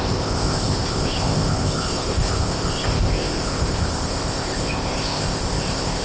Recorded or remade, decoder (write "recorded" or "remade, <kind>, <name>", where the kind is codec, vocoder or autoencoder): remade, codec, ZipCodec